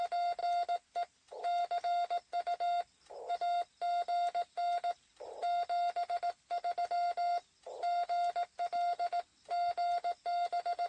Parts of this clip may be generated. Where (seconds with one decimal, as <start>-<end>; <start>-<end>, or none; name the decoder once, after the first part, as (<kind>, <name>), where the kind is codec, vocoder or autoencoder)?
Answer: none